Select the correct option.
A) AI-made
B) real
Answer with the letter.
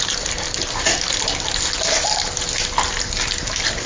B